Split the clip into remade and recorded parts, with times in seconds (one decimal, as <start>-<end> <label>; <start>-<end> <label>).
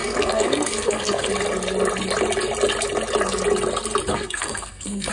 0.0-1.3 remade; 1.3-4.1 recorded; 4.1-5.1 remade